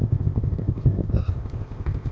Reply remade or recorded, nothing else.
remade